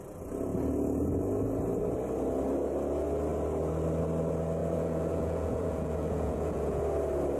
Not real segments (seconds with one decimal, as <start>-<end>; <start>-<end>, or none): 4.6-6.8